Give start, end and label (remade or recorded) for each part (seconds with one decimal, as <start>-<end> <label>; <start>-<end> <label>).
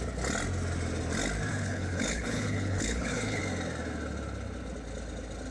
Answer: 0.0-1.5 recorded; 1.5-3.4 remade; 3.4-5.5 recorded